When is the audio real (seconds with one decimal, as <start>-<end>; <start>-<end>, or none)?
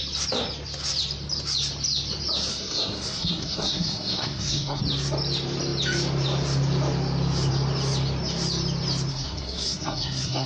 0.0-2.5; 4.8-9.1